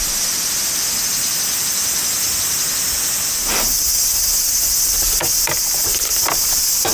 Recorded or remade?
recorded